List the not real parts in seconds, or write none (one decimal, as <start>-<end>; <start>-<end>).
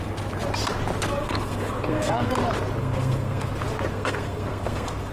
1.2-2.3; 2.8-3.5; 3.9-5.1